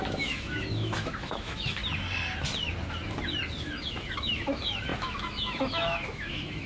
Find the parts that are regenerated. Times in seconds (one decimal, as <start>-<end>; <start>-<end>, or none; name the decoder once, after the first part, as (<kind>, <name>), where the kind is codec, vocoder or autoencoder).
0.0-1.8 (autoencoder, DAC-VAE); 3.9-6.7